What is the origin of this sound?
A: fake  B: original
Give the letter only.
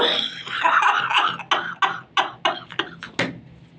B